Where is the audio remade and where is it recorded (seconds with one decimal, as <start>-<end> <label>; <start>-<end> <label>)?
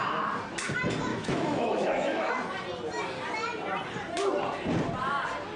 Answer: 0.0-1.1 recorded; 1.1-2.3 remade; 2.3-5.6 recorded